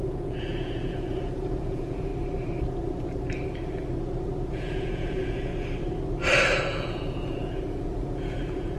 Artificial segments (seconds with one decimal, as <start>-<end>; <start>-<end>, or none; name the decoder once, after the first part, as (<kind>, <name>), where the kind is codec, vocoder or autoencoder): 0.0-2.1 (vocoder, Vocos); 4.5-5.5; 6.6-8.8